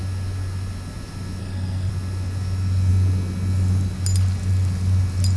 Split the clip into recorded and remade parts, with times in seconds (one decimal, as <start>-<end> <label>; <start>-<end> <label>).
0.0-1.4 recorded; 1.4-1.9 remade; 1.9-5.4 recorded

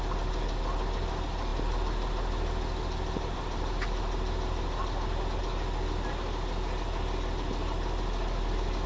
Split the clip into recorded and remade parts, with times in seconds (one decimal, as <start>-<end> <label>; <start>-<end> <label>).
0.0-8.9 recorded

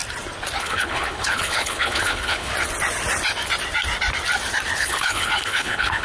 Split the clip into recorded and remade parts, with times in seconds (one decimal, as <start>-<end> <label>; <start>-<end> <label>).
0.0-0.6 recorded; 0.6-2.5 remade; 2.5-4.8 recorded; 4.8-6.0 remade

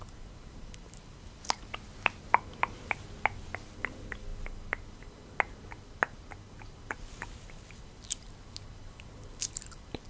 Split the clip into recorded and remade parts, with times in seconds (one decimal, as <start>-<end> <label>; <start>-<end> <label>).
0.0-10.1 recorded

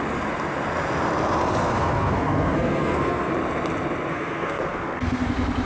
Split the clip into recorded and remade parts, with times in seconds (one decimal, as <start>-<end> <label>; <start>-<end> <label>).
0.0-1.6 recorded; 1.6-3.3 remade; 3.3-4.1 recorded; 4.1-5.3 remade; 5.3-5.7 recorded